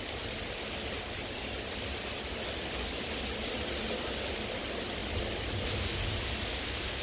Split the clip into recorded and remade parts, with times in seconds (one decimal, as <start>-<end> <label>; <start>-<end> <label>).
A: 0.0-7.0 recorded